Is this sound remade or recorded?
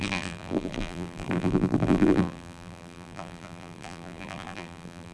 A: remade